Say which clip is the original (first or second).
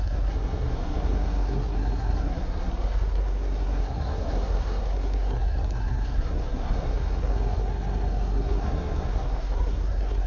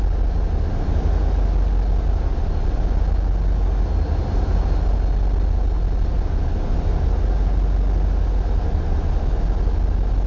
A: second